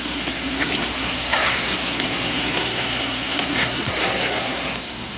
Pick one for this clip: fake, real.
fake